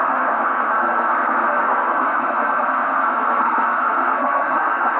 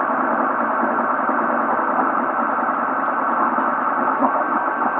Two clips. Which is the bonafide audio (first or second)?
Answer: second